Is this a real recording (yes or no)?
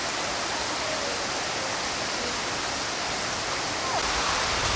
yes